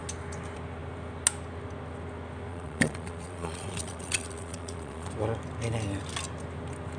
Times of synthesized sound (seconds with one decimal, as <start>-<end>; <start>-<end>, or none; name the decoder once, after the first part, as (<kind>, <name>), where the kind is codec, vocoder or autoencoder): 2.5-5.1 (vocoder, Vocos)